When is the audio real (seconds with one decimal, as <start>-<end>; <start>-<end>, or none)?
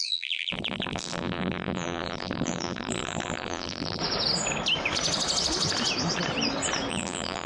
4.0-6.9